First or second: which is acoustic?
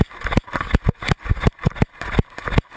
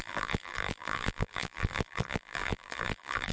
first